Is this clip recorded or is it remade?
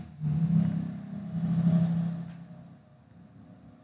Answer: recorded